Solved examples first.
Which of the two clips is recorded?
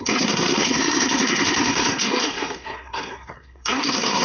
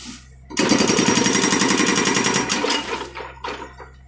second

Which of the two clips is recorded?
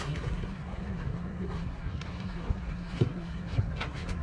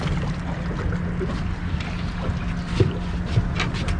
second